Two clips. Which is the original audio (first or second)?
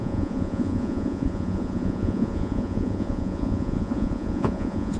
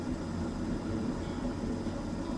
second